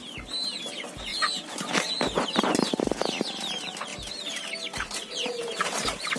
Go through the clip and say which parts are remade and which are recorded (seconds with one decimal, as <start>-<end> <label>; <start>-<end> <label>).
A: 0.0-1.1 recorded; 1.1-1.9 remade; 1.9-3.9 recorded; 3.9-5.8 remade; 5.8-6.2 recorded